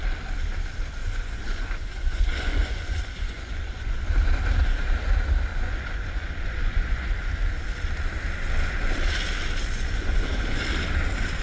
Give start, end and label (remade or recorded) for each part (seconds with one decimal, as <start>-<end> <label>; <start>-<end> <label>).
0.0-1.0 recorded; 1.0-4.0 remade; 4.0-5.5 recorded; 5.5-7.3 remade; 7.3-9.6 recorded; 9.6-10.6 remade; 10.6-11.4 recorded